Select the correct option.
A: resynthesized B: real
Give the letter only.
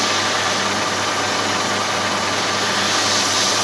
B